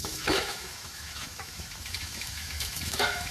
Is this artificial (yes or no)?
yes